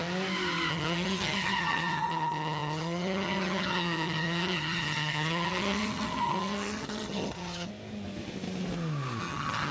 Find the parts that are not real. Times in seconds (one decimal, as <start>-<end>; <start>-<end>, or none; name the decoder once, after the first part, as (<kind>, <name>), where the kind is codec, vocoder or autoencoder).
0.7-7.7 (vocoder, HiFi-GAN); 9.2-9.7